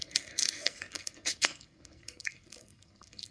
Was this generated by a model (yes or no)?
yes